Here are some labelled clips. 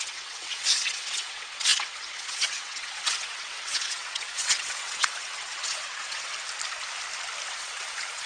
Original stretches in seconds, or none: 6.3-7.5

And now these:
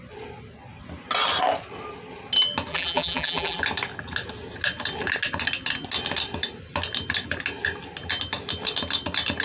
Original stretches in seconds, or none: 0.0-2.7; 3.6-9.4

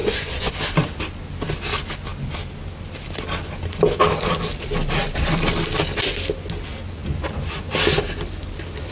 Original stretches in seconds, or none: 0.5-8.9

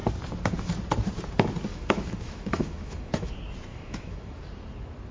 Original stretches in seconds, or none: 0.0-1.7; 3.3-3.7; 4.4-5.1

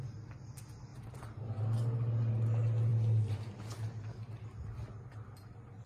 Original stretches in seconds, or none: 0.0-5.9

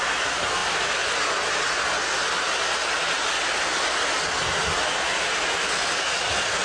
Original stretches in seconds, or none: 0.0-6.6